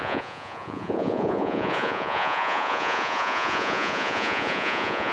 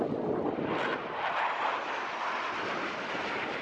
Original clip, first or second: second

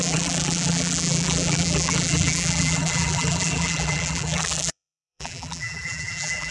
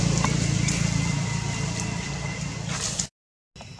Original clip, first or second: second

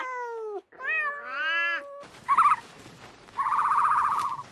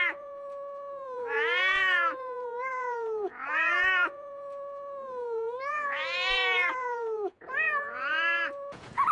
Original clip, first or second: first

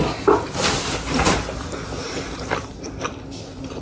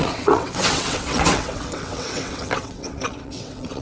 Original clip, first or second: first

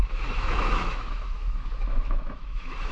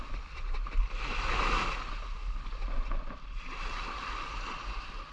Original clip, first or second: second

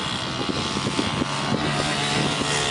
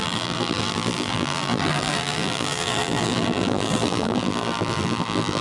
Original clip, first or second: first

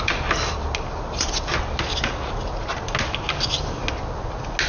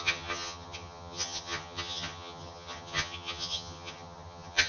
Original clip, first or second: first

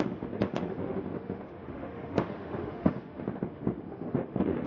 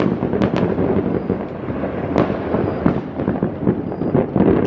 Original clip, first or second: second